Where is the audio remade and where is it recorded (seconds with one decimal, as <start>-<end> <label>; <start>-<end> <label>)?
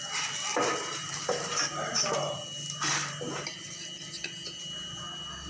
0.0-0.5 recorded; 0.5-2.4 remade; 2.4-2.9 recorded; 2.9-3.5 remade; 3.5-5.5 recorded